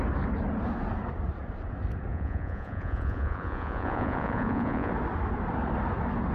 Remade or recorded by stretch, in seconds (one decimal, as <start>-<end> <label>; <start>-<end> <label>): 0.0-2.1 recorded; 2.1-4.9 remade; 4.9-6.3 recorded